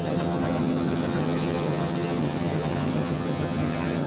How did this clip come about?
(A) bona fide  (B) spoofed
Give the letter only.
B